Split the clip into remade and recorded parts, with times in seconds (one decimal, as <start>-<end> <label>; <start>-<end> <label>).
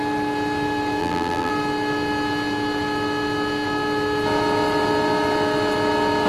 0.0-1.0 recorded; 1.0-1.5 remade; 1.5-6.3 recorded